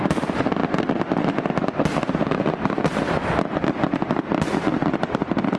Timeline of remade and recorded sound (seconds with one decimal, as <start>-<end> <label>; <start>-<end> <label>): 0.0-4.7 recorded; 4.7-5.6 remade